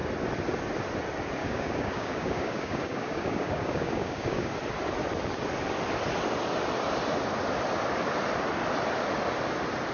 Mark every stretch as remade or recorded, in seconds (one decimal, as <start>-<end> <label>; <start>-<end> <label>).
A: 0.0-1.4 recorded; 1.4-4.5 remade; 4.5-9.9 recorded